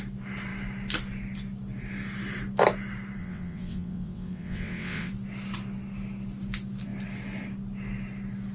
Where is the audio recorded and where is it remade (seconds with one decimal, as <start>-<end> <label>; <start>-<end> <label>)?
0.0-3.2 recorded; 3.2-5.1 remade; 5.1-8.5 recorded